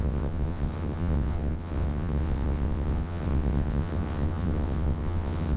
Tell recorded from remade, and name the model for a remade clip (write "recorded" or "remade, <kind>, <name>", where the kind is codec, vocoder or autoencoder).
remade, vocoder, WaveNeXt